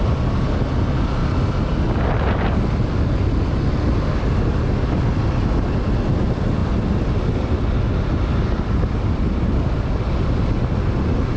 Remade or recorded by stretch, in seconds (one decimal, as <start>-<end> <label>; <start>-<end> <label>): 0.0-11.4 recorded